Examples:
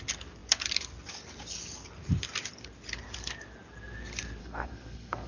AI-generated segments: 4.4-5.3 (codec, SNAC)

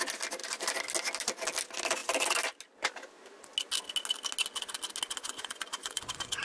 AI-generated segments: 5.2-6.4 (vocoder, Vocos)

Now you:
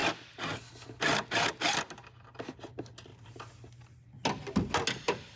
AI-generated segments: none